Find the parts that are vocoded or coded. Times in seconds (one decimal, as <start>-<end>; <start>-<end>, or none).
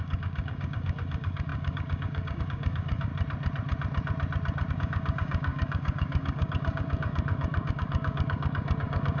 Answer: 0.0-3.1; 4.7-9.2